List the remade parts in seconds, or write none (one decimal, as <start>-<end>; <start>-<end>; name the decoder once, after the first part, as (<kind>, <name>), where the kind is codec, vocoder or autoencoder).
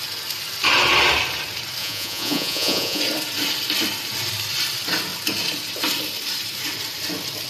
1.8-3.0 (vocoder, Vocos)